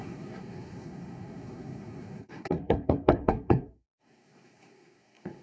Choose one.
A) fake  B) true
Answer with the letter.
A